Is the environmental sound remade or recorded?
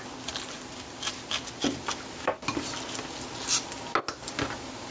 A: recorded